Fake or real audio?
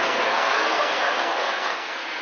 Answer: fake